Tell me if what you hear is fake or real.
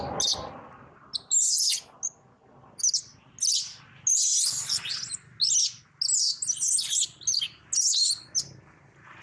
real